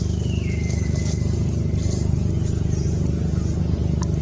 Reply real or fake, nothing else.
real